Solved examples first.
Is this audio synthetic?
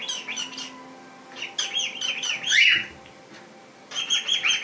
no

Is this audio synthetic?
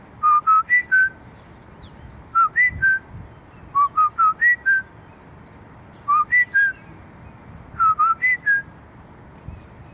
no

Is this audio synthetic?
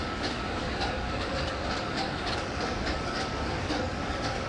yes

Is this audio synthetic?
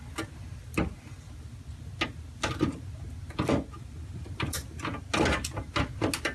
no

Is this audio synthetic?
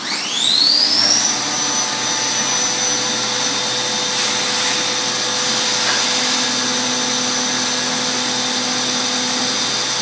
no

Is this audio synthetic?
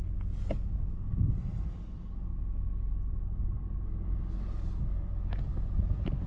no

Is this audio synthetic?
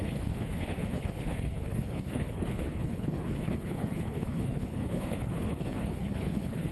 yes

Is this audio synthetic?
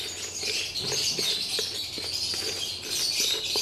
no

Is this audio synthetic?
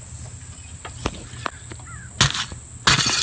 no